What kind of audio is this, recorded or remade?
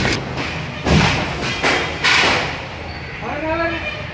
recorded